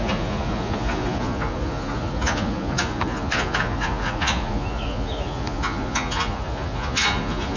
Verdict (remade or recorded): remade